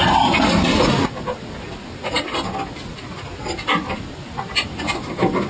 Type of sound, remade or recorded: recorded